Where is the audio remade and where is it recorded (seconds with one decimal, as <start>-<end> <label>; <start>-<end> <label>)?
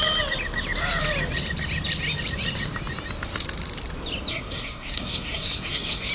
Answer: 0.0-4.3 recorded; 4.3-6.1 remade